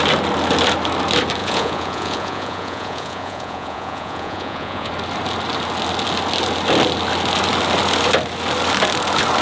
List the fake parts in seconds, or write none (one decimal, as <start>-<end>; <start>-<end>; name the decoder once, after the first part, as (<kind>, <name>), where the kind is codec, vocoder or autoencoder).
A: 1.4-4.9 (vocoder, Vocos)